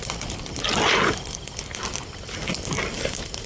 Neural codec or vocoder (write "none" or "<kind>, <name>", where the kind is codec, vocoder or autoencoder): none